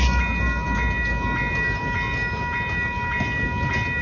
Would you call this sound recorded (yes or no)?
yes